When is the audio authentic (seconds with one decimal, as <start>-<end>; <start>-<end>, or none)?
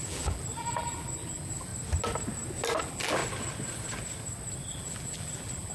1.7-2.8; 3.2-4.7